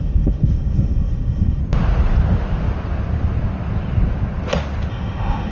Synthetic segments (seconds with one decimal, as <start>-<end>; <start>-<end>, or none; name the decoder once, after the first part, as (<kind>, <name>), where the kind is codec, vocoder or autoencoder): 0.0-1.6 (autoencoder, DAC-VAE); 4.9-5.5